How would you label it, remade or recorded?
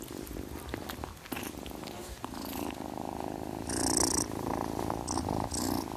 recorded